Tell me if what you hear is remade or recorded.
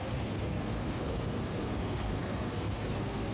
remade